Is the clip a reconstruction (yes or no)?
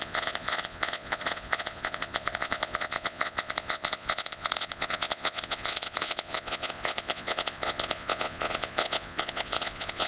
yes